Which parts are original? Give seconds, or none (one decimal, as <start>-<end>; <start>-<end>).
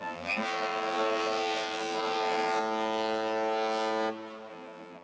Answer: 2.6-4.5